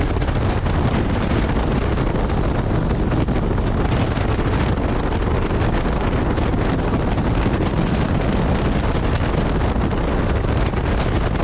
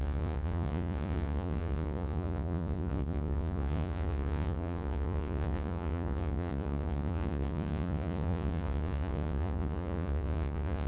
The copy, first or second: second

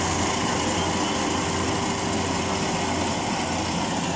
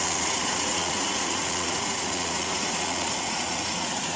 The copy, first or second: second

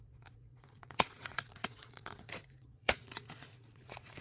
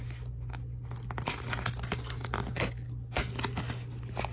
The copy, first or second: first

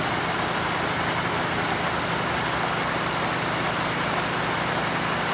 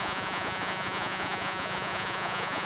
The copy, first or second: second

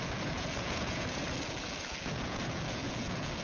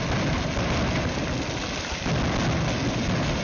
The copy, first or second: first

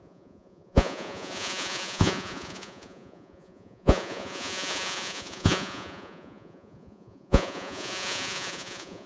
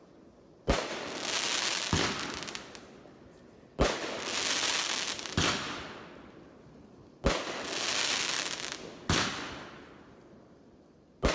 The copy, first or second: first